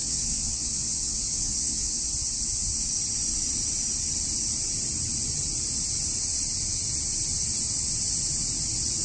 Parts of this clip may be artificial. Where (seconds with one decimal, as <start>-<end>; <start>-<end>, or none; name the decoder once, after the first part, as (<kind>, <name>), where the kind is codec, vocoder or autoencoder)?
0.0-2.0 (vocoder, WaveNeXt)